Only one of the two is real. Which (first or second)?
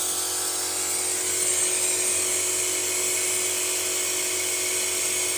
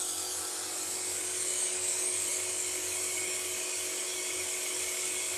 first